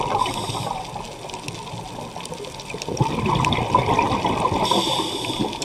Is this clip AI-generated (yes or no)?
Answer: no